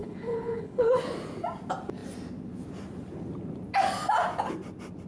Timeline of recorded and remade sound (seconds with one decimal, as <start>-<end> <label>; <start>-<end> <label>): 0.0-1.0 remade; 1.0-5.1 recorded

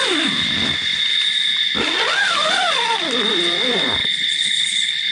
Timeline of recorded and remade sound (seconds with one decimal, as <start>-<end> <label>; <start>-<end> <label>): 0.0-4.0 recorded; 4.0-5.1 remade

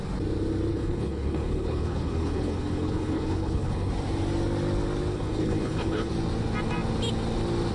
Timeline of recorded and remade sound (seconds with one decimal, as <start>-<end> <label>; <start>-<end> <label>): 0.0-0.7 recorded; 0.7-3.9 remade; 3.9-5.1 recorded; 5.1-6.1 remade; 6.1-7.7 recorded